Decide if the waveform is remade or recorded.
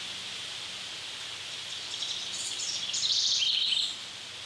remade